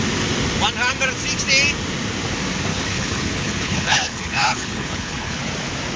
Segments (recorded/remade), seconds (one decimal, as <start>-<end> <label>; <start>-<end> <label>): 0.0-2.7 recorded; 2.7-5.4 remade; 5.4-6.0 recorded